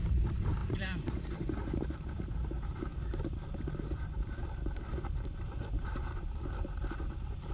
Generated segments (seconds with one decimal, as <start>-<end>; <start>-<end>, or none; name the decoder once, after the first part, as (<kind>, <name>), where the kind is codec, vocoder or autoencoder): 0.0-7.5 (vocoder, BigVGAN v2)